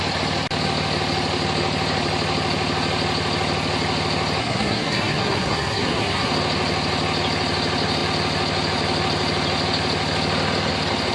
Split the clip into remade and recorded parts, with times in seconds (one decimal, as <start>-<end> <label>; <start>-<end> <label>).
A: 0.0-4.4 recorded; 4.4-6.3 remade; 6.3-11.1 recorded